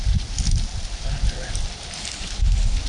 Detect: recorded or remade recorded